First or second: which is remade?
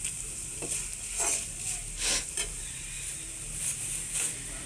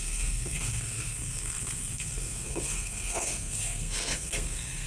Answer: second